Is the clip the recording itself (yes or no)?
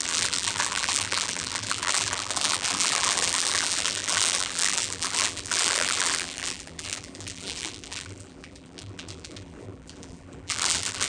no